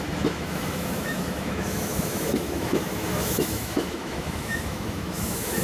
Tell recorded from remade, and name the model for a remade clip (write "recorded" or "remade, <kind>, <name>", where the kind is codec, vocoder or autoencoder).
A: remade, autoencoder, DAC-VAE